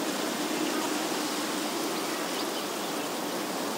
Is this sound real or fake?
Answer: real